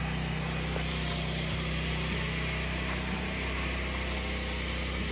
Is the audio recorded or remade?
recorded